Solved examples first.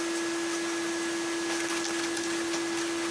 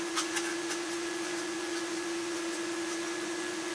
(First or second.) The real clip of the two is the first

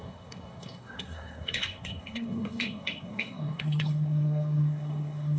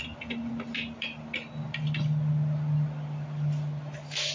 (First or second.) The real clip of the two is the second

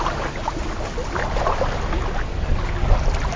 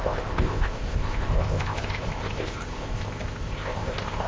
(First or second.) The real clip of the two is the first